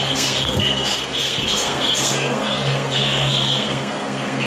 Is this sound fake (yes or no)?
yes